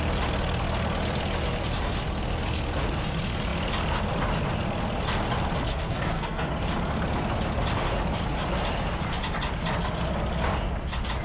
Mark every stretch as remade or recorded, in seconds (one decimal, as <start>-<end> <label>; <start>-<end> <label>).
0.0-5.7 recorded; 5.7-6.5 remade; 6.5-11.2 recorded